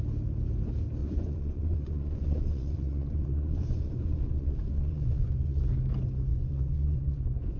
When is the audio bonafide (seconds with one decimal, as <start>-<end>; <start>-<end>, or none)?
0.0-1.0; 5.6-6.3